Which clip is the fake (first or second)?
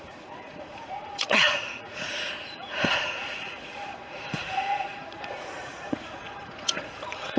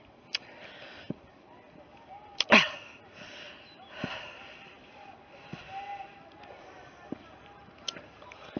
first